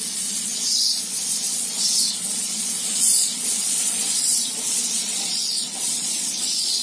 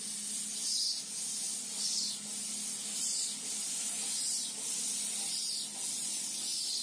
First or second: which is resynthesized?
first